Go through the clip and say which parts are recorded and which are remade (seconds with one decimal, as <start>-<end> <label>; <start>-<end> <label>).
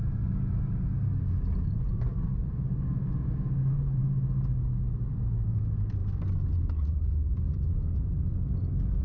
0.0-6.0 recorded; 6.0-8.2 remade; 8.2-9.0 recorded